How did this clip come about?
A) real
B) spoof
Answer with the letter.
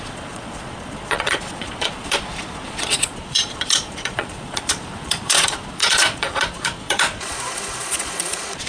B